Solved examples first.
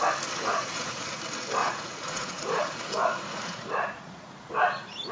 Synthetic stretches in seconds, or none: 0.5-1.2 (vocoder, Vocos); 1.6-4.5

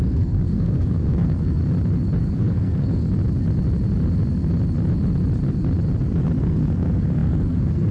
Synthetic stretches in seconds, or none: 0.0-1.6 (codec, SNAC); 2.2-3.0; 6.4-7.9

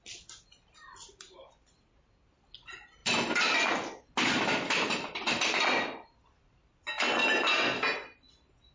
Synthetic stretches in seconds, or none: none

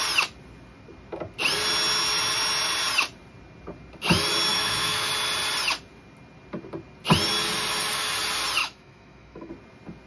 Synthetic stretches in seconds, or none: 4.5-5.1 (autoencoder, DAC-VAE); 8.6-9.5